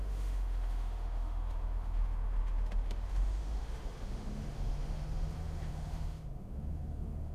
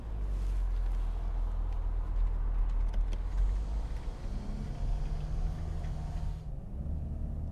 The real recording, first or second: second